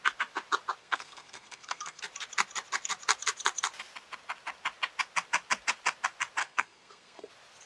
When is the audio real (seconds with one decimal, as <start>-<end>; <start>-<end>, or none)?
0.0-0.8; 2.0-6.4; 7.3-7.7

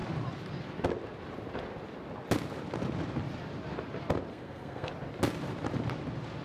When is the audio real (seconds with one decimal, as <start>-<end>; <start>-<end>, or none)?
0.0-4.3; 4.9-6.4